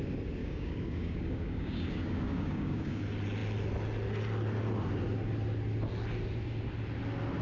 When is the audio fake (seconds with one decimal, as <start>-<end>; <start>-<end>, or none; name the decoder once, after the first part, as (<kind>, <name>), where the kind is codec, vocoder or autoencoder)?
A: 0.4-3.0 (codec, DAC)